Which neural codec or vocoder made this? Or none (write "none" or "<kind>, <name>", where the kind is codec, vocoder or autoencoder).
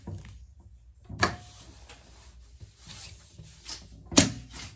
none